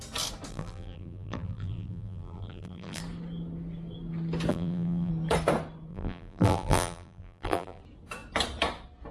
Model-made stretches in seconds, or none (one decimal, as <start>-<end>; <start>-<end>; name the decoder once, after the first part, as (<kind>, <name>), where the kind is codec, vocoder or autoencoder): 0.5-3.0 (vocoder, BigVGAN v2); 4.5-5.1; 5.9-7.8